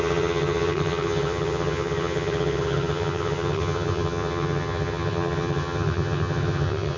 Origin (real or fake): fake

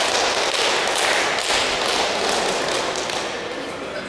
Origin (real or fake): real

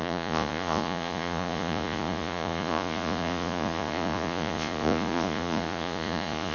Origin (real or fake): fake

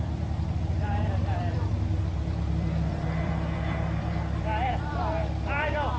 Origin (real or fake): fake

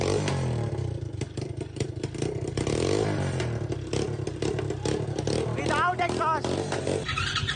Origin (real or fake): real